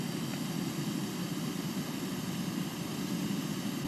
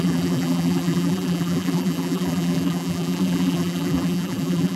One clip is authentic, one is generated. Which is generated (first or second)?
second